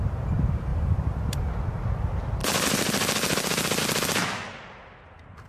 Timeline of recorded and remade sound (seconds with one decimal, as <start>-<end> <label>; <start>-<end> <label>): 0.0-0.7 recorded; 0.7-1.5 remade; 1.5-2.4 recorded; 2.4-3.8 remade; 3.8-5.5 recorded